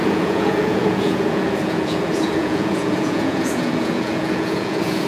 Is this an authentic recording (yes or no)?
no